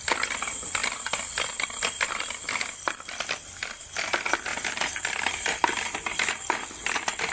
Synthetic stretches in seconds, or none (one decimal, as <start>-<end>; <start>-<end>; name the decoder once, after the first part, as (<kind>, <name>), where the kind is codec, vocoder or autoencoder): none

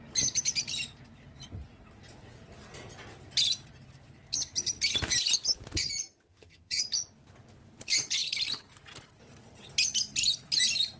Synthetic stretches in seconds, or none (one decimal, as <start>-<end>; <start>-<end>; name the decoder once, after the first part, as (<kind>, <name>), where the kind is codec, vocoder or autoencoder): 6.3-6.8 (vocoder, HiFi-GAN)

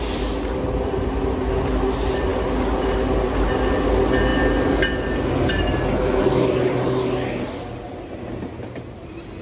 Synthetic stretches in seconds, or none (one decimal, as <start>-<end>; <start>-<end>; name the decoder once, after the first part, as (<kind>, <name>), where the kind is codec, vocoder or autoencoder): none

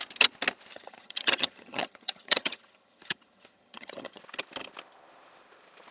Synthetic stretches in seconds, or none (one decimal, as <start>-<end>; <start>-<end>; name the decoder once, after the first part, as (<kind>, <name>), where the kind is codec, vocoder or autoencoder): 0.7-4.2 (vocoder, HiFi-GAN)

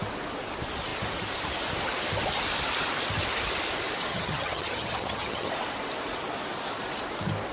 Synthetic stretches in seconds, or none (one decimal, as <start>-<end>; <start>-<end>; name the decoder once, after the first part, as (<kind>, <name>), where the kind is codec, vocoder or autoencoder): 4.1-5.5 (vocoder, HiFi-GAN)